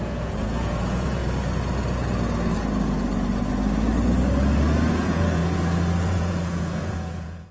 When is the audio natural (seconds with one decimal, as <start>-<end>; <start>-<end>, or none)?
1.2-4.9; 5.4-6.0